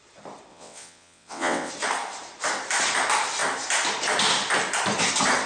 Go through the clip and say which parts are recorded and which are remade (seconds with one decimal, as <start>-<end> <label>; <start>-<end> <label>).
0.0-0.5 recorded; 0.5-1.7 remade; 1.7-5.5 recorded